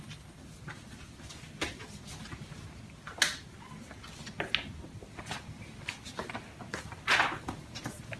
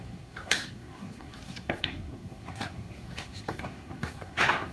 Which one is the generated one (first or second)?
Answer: second